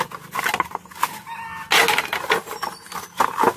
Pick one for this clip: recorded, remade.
recorded